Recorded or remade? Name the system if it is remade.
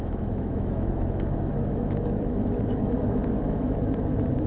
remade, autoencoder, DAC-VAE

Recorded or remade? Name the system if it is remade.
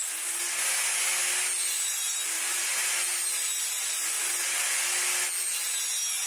recorded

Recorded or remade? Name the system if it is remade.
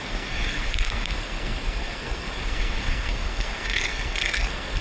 remade, codec, SNAC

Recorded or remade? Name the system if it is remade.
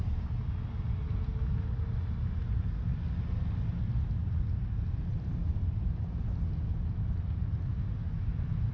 recorded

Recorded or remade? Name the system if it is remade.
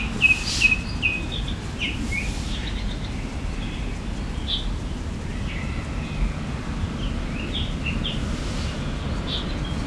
recorded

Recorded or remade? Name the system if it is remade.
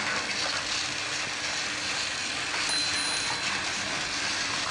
recorded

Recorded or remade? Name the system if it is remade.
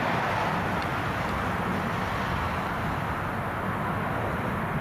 recorded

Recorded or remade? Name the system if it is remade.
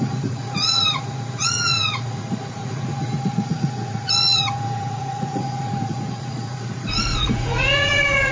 remade, vocoder, Vocos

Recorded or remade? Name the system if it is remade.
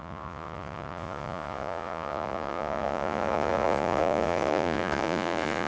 remade, vocoder, Vocos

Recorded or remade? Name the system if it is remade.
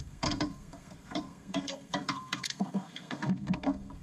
remade, codec, SNAC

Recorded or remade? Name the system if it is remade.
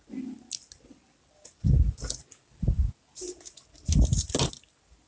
recorded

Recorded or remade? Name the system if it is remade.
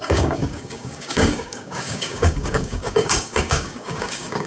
remade, codec, DAC